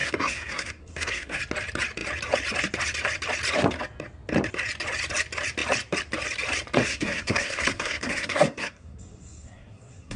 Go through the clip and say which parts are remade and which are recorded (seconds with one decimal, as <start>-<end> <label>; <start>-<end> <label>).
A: 0.0-1.4 remade; 1.4-6.8 recorded; 6.8-10.2 remade